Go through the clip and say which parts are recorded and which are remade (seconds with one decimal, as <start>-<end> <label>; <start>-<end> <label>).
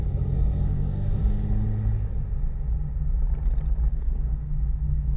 0.0-1.2 remade; 1.2-3.9 recorded; 3.9-5.2 remade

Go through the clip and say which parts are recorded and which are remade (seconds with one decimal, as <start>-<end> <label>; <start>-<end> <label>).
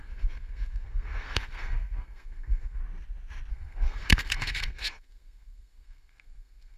0.0-2.8 remade; 2.8-3.5 recorded; 3.5-6.8 remade